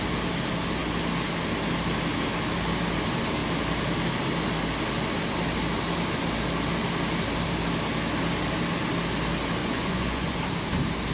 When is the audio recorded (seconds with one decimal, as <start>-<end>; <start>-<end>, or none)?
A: 0.0-9.6; 10.4-11.1